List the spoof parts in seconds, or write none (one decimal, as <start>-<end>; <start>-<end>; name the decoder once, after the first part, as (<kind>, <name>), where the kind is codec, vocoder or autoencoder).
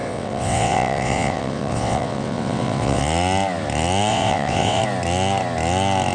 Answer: 0.0-3.0 (vocoder, WaveNeXt); 4.1-4.8